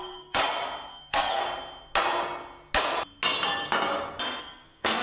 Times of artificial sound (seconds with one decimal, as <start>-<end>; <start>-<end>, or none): 0.0-0.4; 0.9-1.4; 4.4-5.0